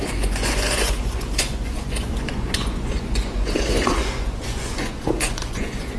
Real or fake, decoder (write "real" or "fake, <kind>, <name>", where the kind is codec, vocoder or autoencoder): fake, vocoder, Vocos